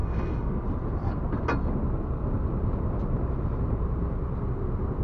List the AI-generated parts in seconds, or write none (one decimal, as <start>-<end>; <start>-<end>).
0.0-0.5